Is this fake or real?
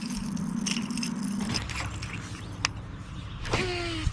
real